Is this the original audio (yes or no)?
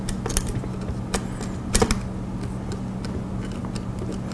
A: yes